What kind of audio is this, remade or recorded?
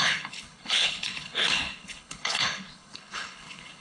remade